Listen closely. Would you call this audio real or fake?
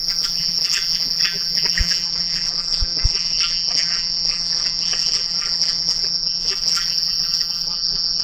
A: fake